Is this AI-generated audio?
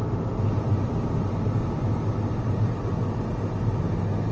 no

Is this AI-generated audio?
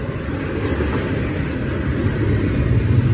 no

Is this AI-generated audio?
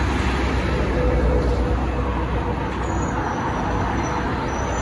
no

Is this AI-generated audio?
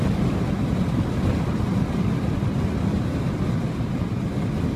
no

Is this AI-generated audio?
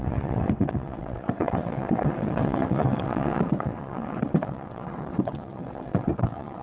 yes